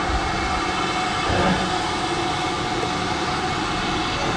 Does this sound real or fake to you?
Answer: real